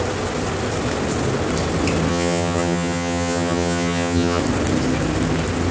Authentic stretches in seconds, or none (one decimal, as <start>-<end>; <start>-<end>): 0.0-2.1; 4.4-5.7